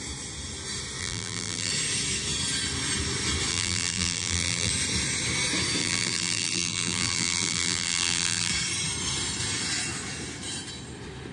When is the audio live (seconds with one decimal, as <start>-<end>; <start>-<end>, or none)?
0.0-1.0; 1.7-3.5; 4.7-5.8; 8.5-11.3